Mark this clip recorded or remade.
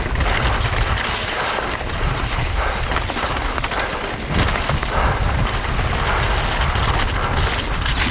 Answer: recorded